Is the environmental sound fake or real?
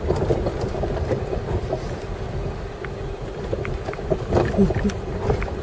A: real